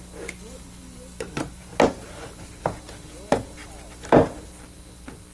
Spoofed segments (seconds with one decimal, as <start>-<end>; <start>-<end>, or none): none